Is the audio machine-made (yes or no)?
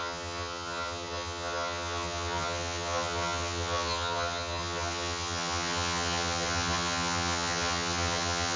yes